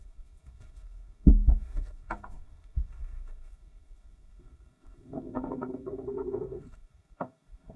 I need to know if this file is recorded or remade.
remade